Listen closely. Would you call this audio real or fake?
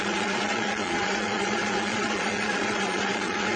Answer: fake